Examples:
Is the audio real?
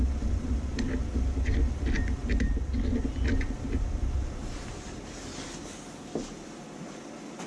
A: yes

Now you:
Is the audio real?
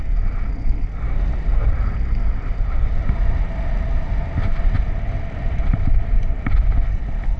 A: yes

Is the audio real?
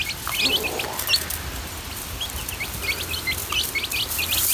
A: yes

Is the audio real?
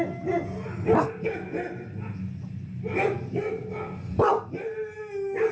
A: yes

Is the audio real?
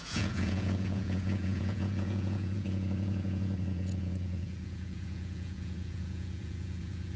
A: no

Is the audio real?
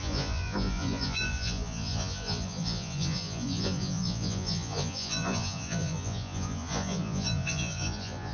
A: no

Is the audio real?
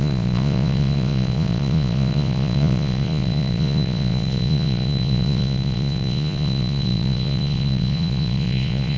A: no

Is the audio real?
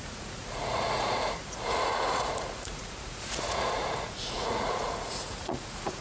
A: no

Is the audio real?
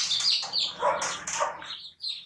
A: yes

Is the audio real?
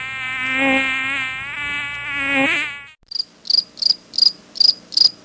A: yes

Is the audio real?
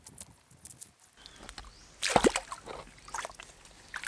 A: yes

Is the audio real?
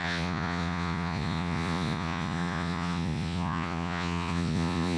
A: no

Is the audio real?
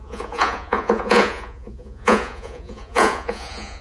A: no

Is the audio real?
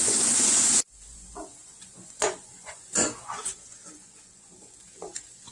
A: no